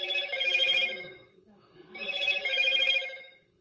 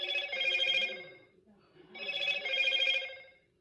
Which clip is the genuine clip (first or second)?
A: second